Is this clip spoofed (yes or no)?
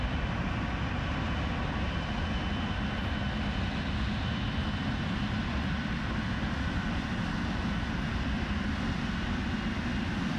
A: no